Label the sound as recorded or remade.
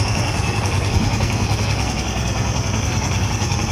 remade